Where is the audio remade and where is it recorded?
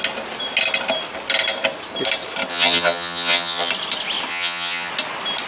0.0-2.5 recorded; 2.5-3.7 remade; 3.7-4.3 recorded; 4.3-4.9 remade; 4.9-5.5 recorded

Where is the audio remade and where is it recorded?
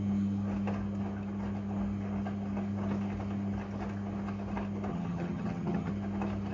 0.0-4.9 recorded; 4.9-5.9 remade; 5.9-6.5 recorded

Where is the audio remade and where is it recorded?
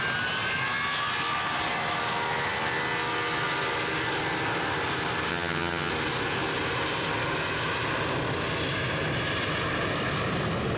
0.0-5.3 recorded; 5.3-5.9 remade; 5.9-10.8 recorded